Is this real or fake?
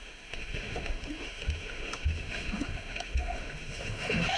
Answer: fake